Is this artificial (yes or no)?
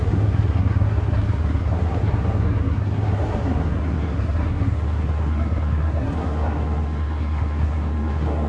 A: yes